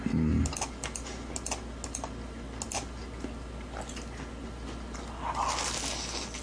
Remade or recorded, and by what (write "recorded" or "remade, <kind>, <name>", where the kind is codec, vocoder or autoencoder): recorded